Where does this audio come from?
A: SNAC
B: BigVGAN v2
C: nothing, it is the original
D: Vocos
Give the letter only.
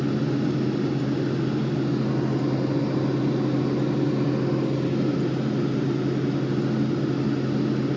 C